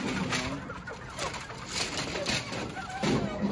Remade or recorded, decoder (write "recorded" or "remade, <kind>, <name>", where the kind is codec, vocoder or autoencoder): recorded